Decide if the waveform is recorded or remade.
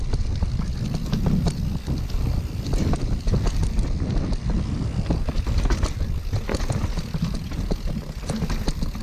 recorded